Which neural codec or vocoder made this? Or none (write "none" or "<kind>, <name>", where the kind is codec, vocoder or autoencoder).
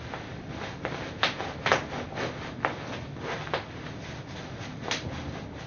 none